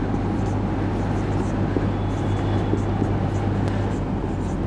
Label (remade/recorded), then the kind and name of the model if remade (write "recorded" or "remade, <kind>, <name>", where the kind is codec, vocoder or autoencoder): recorded